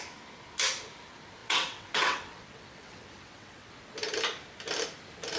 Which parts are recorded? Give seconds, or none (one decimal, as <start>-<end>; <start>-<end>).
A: 0.0-1.4; 3.7-5.4